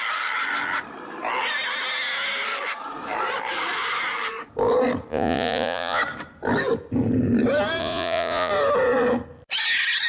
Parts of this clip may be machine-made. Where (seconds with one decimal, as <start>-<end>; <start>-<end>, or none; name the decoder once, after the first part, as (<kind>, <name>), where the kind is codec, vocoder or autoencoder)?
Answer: 5.1-6.0 (vocoder, Vocos); 7.8-8.5